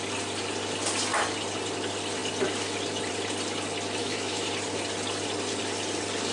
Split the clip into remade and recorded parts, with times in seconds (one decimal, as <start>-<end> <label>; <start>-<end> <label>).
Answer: 0.0-4.0 recorded; 4.0-4.5 remade; 4.5-6.3 recorded